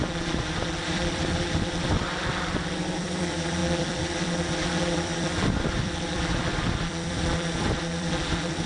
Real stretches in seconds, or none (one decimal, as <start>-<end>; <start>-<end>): none